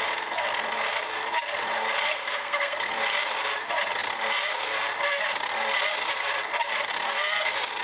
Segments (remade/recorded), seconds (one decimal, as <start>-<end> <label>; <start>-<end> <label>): 0.0-2.1 recorded; 2.1-2.9 remade; 2.9-7.8 recorded